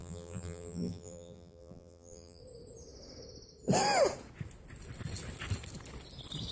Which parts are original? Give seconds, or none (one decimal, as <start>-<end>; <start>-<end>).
2.4-6.5